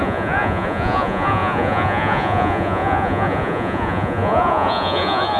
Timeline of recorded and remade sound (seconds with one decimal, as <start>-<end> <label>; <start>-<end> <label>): 0.0-5.4 remade

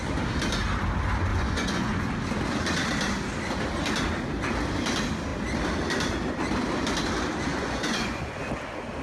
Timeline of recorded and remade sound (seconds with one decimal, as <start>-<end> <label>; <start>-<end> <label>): 0.0-1.3 recorded; 1.3-2.1 remade; 2.1-7.5 recorded; 7.5-8.4 remade; 8.4-9.0 recorded

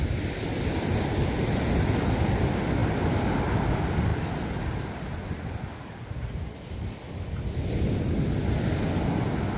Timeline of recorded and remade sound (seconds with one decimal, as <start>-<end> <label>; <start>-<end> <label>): 0.0-9.6 recorded

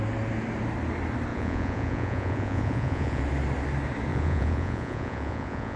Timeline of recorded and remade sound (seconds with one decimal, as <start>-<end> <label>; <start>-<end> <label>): 0.0-1.3 recorded; 1.3-3.2 remade; 3.2-4.1 recorded; 4.1-5.8 remade

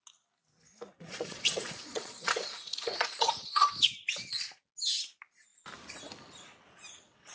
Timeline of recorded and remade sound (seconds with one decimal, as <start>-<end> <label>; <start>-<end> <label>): 0.0-0.9 recorded; 0.9-3.7 remade; 3.7-7.3 recorded